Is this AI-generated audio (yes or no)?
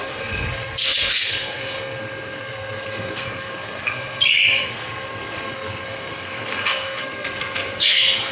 yes